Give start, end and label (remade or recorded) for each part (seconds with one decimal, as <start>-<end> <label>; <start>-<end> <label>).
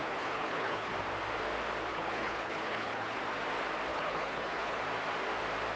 0.0-0.9 remade; 0.9-1.9 recorded; 1.9-3.2 remade; 3.2-3.9 recorded; 3.9-4.8 remade; 4.8-5.8 recorded